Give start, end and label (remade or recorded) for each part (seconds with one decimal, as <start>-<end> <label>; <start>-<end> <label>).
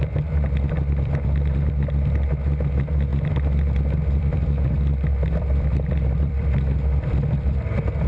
0.0-3.1 recorded; 3.1-8.1 remade